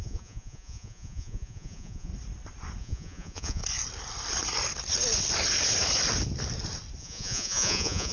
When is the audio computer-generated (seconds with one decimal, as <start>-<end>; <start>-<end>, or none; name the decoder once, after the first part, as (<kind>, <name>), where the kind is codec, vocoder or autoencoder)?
0.0-2.1 (vocoder, Vocos); 2.8-3.6; 7.0-8.1